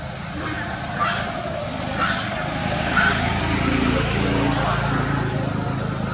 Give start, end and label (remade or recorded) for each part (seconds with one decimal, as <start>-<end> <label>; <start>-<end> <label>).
0.0-2.6 recorded; 2.6-3.4 remade; 3.4-6.1 recorded